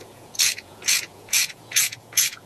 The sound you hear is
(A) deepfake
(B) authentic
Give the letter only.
A